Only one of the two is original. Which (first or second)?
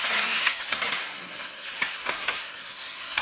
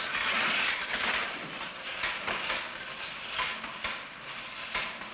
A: second